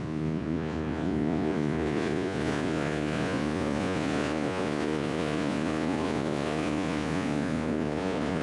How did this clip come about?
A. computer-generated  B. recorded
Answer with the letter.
A